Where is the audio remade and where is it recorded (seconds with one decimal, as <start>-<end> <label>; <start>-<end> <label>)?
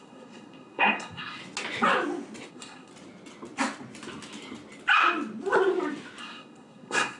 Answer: 0.0-1.4 remade; 1.4-2.5 recorded; 2.5-2.9 remade; 2.9-6.2 recorded; 6.2-7.2 remade